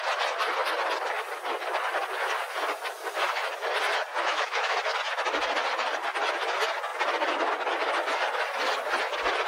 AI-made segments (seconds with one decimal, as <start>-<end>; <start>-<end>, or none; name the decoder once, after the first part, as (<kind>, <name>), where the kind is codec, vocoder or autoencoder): 4.3-4.8 (autoencoder, DAC-VAE)

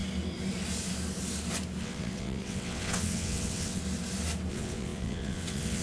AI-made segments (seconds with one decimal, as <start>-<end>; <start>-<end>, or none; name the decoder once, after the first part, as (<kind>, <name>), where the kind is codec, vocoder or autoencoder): 1.8-3.8 (vocoder, WaveNeXt); 4.5-5.8

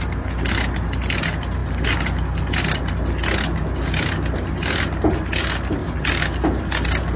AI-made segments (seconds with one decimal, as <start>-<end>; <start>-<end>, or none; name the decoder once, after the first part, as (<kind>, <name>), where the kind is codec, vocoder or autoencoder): none

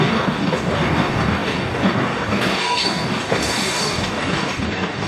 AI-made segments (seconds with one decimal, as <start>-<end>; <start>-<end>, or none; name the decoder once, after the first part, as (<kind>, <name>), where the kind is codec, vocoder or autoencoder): 0.0-5.1 (codec, DAC)

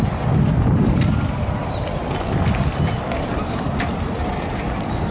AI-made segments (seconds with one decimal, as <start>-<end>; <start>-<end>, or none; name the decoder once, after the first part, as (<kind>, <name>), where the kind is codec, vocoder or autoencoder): 0.0-1.6 (vocoder, BigVGAN v2); 2.7-5.1

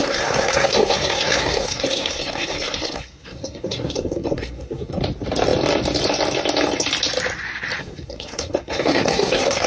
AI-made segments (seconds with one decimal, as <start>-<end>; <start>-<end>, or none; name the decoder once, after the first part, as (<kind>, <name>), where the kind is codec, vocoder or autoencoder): 0.0-5.0 (codec, SNAC); 7.8-9.7

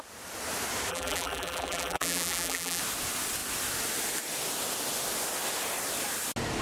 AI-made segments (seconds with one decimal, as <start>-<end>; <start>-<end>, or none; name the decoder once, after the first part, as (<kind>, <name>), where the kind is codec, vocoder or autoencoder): 0.9-2.8 (vocoder, BigVGAN v2)

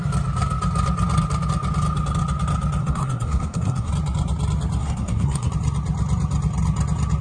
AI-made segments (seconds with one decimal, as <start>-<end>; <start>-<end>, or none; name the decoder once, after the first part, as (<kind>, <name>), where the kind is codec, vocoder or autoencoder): 2.8-3.9 (codec, SNAC); 4.8-5.5